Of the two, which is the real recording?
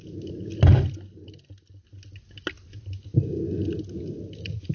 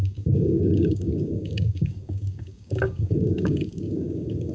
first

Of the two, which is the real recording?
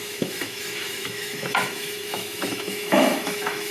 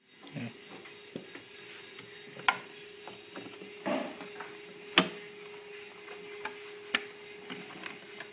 second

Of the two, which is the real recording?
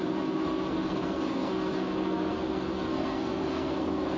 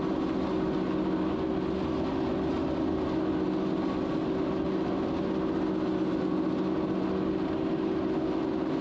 second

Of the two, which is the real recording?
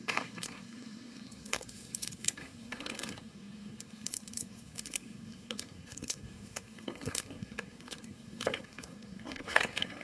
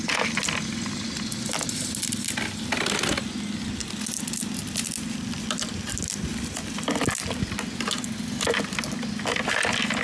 second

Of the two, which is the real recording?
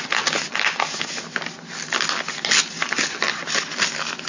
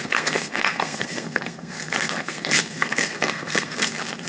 first